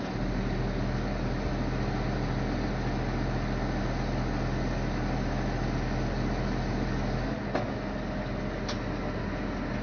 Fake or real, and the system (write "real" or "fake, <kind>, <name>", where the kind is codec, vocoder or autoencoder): real